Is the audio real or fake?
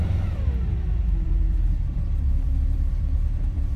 fake